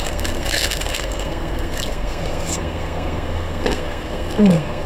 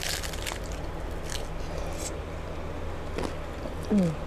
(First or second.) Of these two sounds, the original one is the second